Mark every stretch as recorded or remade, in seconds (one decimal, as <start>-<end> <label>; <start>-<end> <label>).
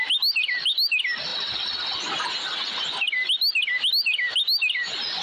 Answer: 0.0-5.2 recorded